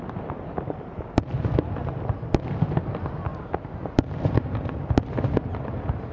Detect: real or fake real